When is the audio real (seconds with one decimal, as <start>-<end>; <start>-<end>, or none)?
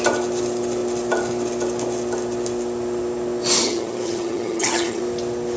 0.0-3.6; 5.0-5.6